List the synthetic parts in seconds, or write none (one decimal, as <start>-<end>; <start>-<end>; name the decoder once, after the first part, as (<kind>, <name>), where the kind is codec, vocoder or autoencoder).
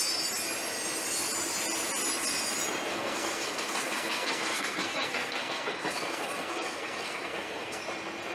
2.9-7.8 (codec, SNAC)